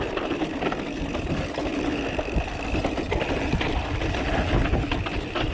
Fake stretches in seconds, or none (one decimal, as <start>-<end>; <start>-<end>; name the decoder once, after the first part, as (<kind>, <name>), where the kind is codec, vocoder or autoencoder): none